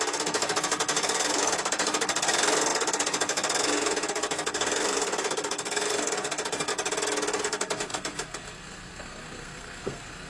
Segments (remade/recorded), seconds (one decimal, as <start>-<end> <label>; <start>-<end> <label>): 0.0-6.7 remade; 6.7-7.4 recorded; 7.4-10.3 remade